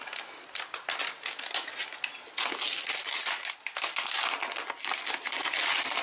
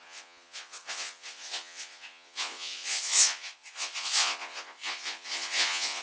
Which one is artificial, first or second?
second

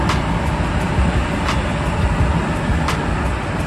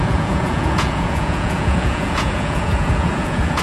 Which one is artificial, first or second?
second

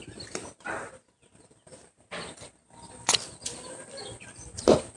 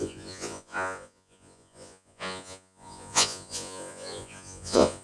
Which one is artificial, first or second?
second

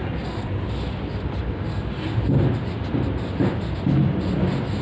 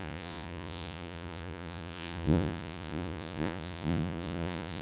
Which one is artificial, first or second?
second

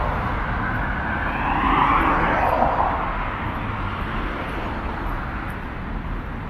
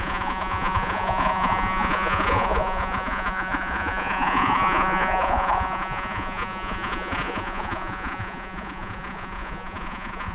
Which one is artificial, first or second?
second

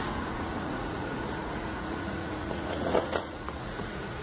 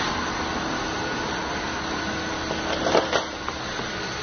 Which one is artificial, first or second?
first